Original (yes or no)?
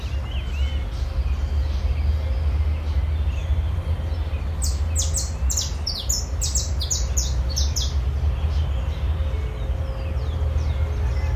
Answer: yes